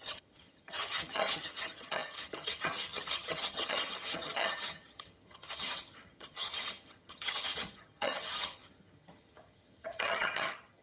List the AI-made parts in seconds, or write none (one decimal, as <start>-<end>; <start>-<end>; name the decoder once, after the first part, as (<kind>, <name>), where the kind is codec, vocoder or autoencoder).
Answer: 0.0-10.8 (vocoder, HiFi-GAN)